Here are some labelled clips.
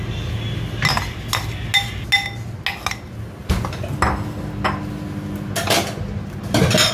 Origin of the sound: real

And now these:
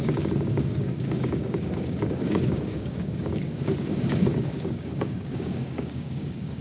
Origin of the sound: fake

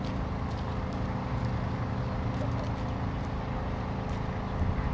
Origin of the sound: real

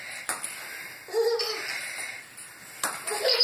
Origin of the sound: real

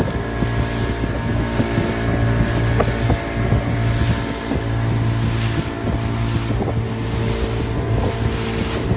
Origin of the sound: real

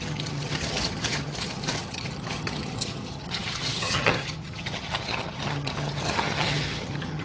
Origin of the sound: fake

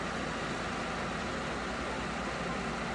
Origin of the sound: real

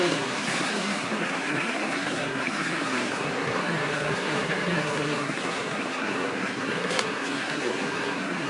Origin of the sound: fake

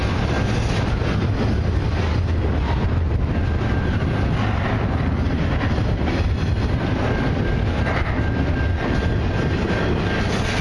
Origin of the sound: real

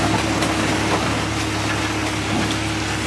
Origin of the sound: real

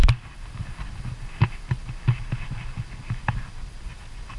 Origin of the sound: real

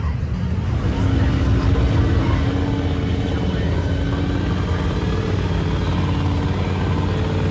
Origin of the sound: real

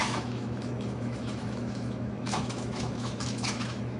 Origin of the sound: fake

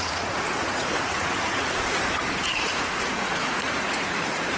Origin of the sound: fake